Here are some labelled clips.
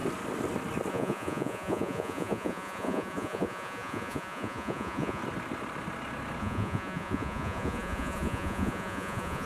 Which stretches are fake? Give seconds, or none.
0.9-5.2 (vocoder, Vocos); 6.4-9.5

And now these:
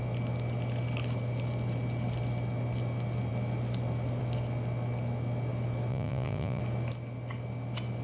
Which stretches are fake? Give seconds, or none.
5.9-6.6 (vocoder, Vocos)

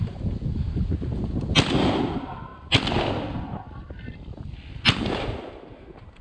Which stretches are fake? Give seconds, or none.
none

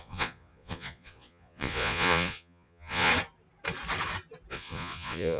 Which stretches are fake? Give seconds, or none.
0.0-3.1 (vocoder, Vocos); 4.5-5.4

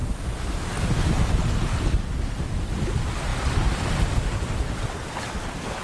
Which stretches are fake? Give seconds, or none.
none

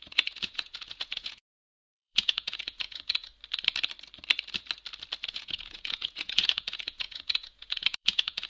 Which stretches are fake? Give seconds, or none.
0.0-3.3 (vocoder, Vocos); 5.3-8.5

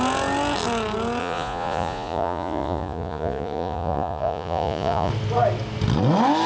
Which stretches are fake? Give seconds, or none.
1.2-5.1 (vocoder, Vocos)